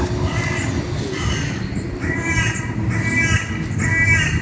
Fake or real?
real